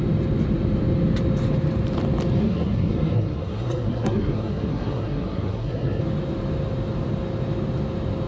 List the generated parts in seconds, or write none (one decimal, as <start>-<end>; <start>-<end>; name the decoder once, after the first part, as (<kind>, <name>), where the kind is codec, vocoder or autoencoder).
2.4-6.0 (codec, SNAC)